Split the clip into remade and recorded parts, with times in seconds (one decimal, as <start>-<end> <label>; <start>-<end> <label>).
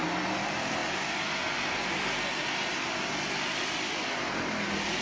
0.0-5.0 recorded